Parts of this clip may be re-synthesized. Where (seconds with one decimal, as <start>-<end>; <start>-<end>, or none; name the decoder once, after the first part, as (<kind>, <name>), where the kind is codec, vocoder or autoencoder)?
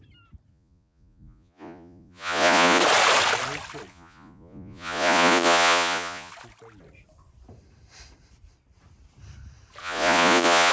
0.5-2.8 (vocoder, Vocos); 3.9-6.3; 9.8-10.7